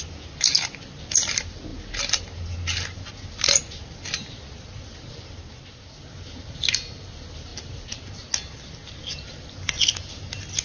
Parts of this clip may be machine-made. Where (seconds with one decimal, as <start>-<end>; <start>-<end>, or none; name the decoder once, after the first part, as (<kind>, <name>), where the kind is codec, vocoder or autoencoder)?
none